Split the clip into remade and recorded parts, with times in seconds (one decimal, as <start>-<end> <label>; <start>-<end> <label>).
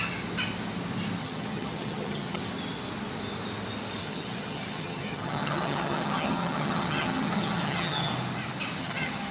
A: 0.0-1.2 recorded; 1.2-2.4 remade; 2.4-4.0 recorded; 4.0-8.1 remade; 8.1-8.8 recorded; 8.8-9.3 remade